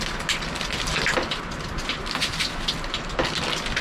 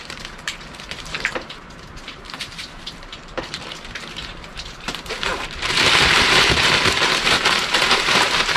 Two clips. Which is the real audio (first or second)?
first